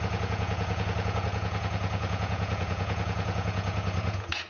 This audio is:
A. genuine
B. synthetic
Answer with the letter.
B